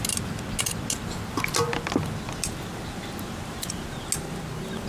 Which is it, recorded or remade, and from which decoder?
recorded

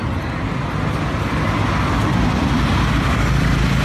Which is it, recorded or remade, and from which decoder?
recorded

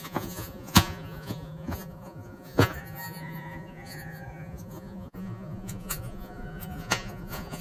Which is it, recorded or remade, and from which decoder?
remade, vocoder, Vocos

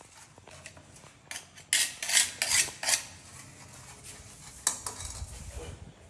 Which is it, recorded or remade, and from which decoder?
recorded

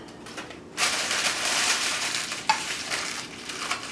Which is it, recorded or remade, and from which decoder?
remade, vocoder, BigVGAN v2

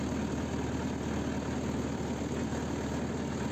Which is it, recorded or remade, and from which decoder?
recorded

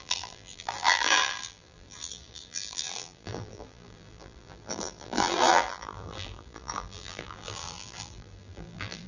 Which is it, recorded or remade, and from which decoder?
remade, vocoder, BigVGAN v2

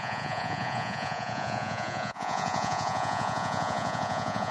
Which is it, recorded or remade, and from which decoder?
remade, vocoder, Vocos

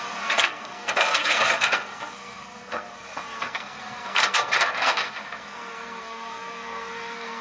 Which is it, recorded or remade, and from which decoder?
remade, codec, SNAC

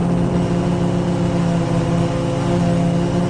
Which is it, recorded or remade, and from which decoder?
recorded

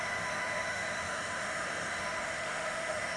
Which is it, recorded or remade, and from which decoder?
remade, autoencoder, DAC-VAE